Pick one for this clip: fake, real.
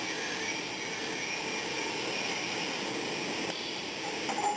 real